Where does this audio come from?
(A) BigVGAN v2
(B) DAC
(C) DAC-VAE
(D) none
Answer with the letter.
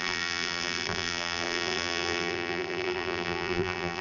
A